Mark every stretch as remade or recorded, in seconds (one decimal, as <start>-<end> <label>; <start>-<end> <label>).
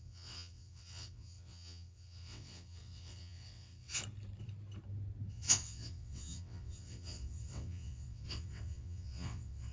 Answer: 0.0-4.0 remade; 4.0-5.3 recorded; 5.3-9.7 remade